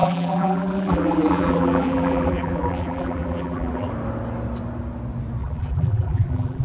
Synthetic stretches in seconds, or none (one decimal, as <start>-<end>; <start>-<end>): 0.0-3.9; 5.4-6.6